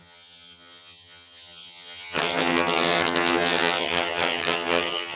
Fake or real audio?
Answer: fake